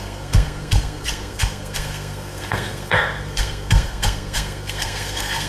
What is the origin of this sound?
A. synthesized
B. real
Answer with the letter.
A